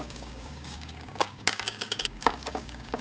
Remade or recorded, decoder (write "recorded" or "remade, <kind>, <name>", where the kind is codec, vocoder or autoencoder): remade, codec, DAC